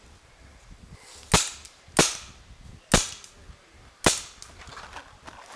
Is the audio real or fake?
real